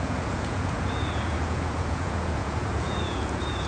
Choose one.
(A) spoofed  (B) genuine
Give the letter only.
A